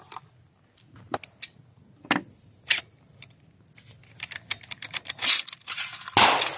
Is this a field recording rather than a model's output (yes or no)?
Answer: yes